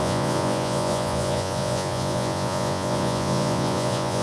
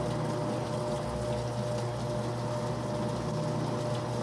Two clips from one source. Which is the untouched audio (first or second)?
second